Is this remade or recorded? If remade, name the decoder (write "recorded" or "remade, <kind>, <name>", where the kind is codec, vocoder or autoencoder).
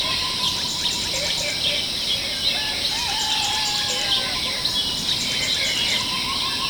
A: recorded